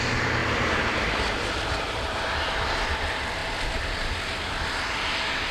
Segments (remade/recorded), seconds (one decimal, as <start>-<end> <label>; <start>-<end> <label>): 0.0-0.4 recorded; 0.4-2.9 remade; 2.9-3.4 recorded; 3.4-4.4 remade; 4.4-5.5 recorded